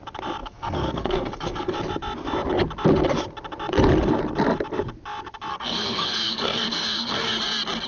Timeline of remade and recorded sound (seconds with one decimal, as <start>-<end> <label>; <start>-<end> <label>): 0.0-0.4 recorded; 0.4-1.7 remade; 1.7-5.5 recorded; 5.5-7.4 remade; 7.4-7.9 recorded